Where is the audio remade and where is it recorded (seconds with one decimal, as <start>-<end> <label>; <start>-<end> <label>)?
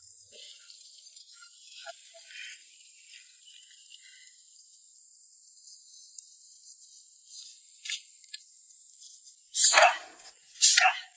0.0-1.2 recorded; 1.2-1.9 remade; 1.9-11.2 recorded